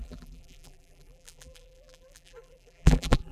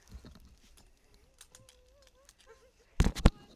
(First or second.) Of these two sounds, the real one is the second